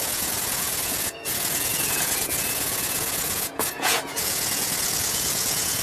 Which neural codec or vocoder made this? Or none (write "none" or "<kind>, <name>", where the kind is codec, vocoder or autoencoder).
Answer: vocoder, Vocos